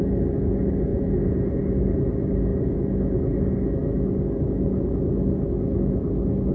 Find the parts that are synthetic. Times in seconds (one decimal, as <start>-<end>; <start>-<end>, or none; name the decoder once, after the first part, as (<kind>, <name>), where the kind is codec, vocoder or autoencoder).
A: 0.9-1.6 (vocoder, Vocos)